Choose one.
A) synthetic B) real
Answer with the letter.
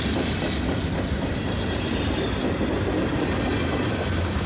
B